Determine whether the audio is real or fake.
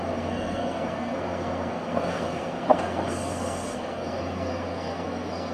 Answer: fake